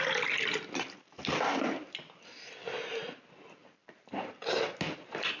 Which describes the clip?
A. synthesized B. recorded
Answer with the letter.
B